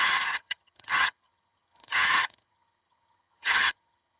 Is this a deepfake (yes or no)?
yes